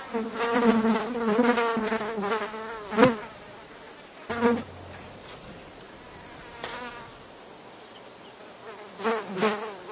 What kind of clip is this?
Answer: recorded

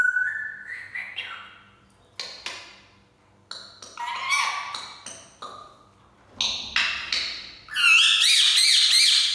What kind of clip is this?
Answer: recorded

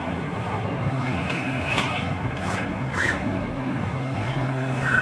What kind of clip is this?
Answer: remade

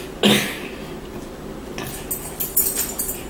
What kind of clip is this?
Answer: recorded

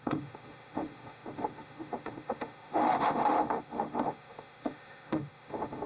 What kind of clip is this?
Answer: remade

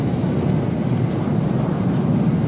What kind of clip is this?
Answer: recorded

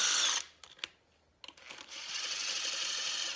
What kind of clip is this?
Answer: recorded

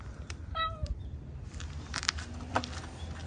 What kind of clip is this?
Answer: remade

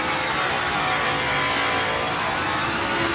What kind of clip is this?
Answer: recorded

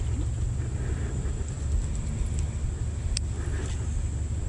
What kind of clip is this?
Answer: recorded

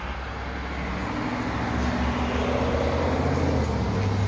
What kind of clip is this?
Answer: recorded